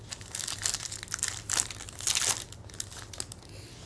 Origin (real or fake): real